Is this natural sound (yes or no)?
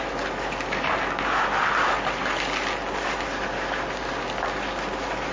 yes